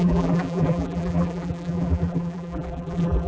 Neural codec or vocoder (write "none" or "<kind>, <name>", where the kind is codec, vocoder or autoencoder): vocoder, BigVGAN v2